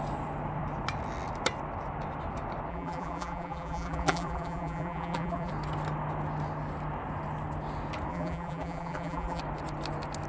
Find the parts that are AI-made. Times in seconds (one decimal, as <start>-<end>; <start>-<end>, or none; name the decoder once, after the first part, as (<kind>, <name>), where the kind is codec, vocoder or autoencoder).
2.7-5.5 (vocoder, BigVGAN v2); 8.1-9.4